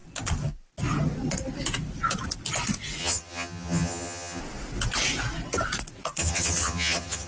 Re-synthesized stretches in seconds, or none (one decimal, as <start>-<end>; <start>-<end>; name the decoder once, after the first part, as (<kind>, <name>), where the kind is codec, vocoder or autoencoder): 3.0-4.4 (vocoder, HiFi-GAN); 6.2-7.3